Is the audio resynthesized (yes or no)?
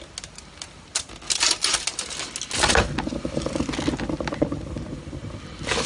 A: no